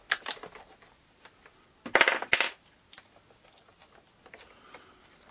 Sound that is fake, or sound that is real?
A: real